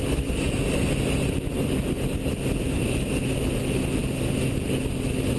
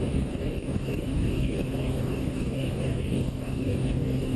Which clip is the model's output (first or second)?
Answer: second